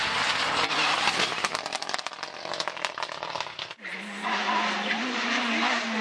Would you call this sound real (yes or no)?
yes